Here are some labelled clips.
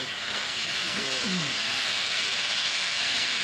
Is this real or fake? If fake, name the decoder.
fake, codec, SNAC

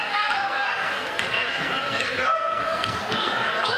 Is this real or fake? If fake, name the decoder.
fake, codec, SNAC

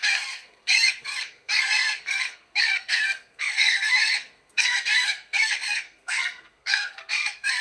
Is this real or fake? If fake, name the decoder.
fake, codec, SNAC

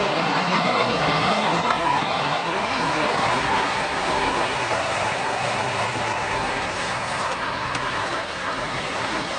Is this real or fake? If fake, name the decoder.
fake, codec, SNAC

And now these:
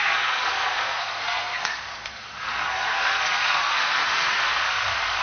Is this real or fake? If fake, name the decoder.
fake, codec, SNAC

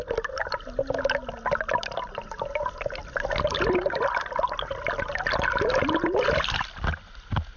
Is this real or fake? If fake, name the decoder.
real